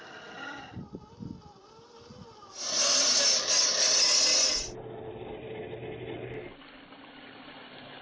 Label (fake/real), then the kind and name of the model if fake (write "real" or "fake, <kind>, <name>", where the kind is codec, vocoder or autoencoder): real